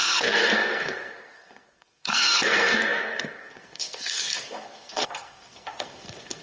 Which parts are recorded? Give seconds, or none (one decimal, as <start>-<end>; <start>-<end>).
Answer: none